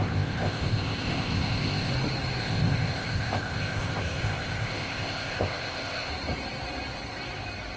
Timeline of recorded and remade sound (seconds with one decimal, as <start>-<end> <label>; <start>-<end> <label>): 0.0-1.9 remade; 1.9-2.4 recorded; 2.4-6.1 remade; 6.1-7.8 recorded